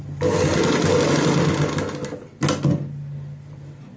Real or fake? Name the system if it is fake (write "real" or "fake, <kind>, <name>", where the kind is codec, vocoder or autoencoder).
real